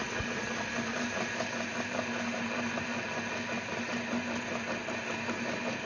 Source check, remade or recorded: recorded